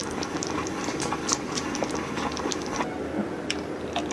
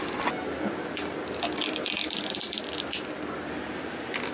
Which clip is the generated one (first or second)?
first